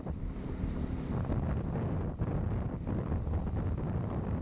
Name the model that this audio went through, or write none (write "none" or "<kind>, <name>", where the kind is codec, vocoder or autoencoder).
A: none